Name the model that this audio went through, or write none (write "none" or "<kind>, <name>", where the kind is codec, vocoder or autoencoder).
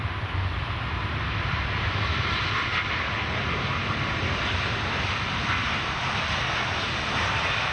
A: vocoder, BigVGAN v2